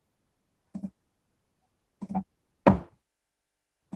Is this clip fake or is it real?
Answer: real